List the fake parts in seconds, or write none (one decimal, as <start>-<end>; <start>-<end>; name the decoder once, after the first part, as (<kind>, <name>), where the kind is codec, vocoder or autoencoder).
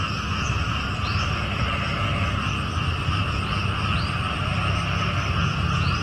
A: 5.4-6.0 (vocoder, Vocos)